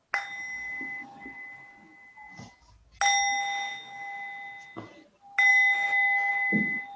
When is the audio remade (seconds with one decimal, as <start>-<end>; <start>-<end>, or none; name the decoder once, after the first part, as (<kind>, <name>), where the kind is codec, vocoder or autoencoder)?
5.5-6.3 (autoencoder, DAC-VAE)